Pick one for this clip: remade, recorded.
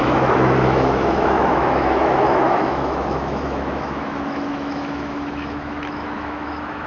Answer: remade